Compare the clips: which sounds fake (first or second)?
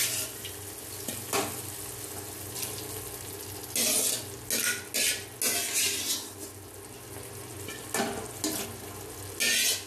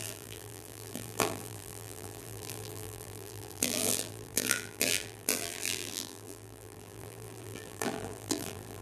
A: second